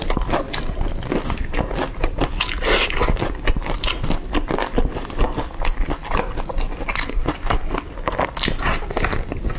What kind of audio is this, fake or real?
real